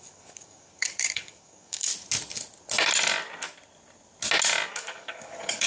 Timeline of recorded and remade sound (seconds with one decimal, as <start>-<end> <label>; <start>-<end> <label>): 0.0-1.9 remade; 1.9-4.7 recorded; 4.7-5.7 remade